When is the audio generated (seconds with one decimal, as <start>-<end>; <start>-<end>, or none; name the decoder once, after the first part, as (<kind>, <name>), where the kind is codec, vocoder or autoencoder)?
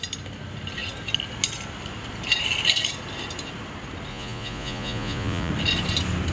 4.1-5.5 (vocoder, Vocos)